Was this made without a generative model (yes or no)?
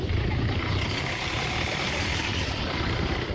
no